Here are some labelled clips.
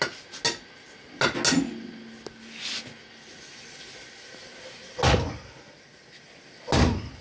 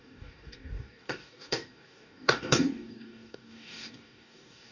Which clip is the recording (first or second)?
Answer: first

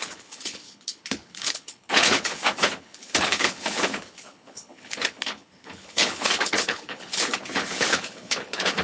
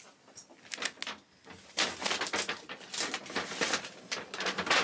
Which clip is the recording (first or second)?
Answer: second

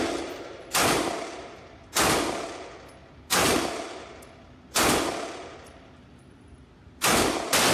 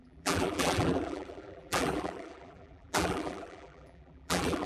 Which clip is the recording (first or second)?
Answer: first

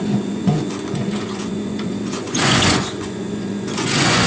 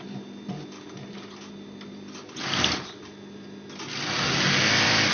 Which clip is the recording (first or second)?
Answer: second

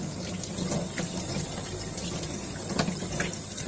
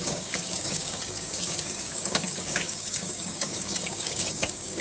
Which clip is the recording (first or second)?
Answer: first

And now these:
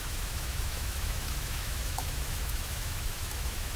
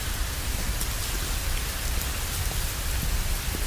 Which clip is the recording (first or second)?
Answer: second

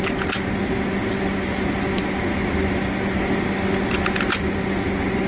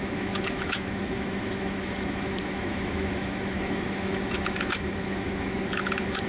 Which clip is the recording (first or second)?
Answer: first